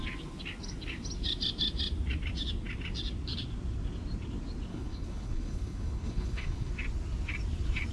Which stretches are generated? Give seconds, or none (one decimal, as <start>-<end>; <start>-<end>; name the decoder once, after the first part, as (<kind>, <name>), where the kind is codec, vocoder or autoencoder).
4.7-6.7 (codec, HILCodec)